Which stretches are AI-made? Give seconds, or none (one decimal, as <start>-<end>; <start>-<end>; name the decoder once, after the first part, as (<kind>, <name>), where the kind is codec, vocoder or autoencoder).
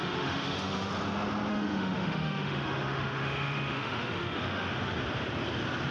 0.0-0.9 (autoencoder, DAC-VAE); 1.5-5.0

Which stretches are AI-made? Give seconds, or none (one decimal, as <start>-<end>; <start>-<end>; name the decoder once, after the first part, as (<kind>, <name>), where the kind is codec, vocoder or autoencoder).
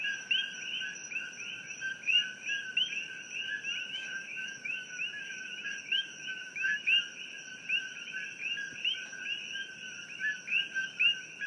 3.8-6.8 (autoencoder, DAC-VAE)